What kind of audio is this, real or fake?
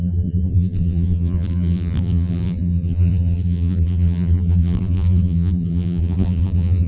fake